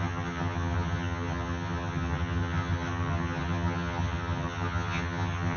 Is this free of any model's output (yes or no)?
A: no